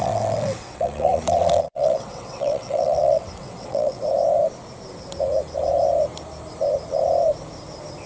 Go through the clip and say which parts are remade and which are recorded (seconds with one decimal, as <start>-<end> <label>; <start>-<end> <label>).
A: 0.0-4.0 remade; 4.0-8.1 recorded